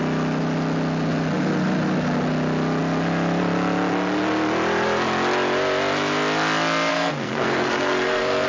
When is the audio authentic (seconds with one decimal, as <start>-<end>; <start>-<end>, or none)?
0.0-6.9